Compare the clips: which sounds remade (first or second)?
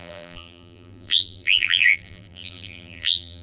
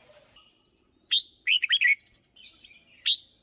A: first